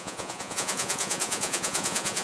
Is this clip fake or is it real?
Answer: fake